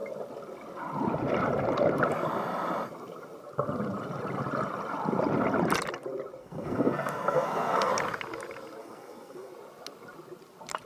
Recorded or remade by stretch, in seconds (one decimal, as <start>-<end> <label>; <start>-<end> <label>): 0.0-6.4 recorded; 6.4-7.9 remade; 7.9-8.8 recorded; 8.8-9.5 remade; 9.5-10.9 recorded